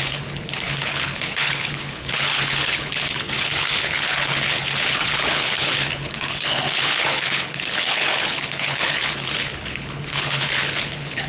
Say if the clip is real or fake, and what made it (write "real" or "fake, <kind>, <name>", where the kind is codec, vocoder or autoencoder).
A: fake, codec, HILCodec